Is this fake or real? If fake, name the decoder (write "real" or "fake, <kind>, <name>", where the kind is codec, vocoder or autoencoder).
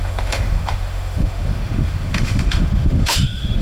fake, autoencoder, DAC-VAE